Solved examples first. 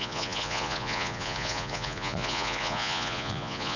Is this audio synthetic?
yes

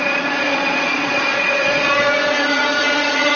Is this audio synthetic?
yes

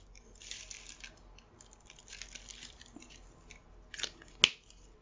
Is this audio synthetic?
no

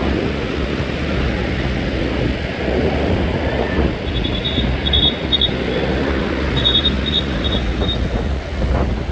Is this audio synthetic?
yes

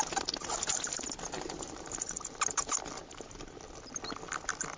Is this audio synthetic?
no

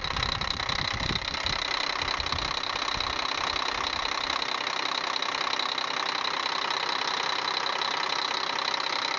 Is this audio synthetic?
no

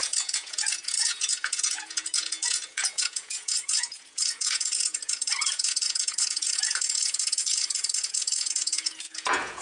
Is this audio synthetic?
yes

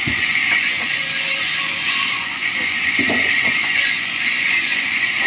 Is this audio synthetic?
yes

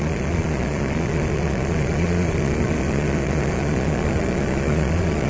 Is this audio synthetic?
yes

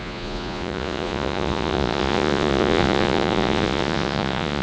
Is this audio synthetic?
yes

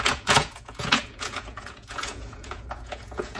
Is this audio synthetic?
yes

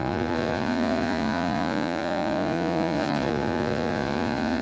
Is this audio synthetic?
yes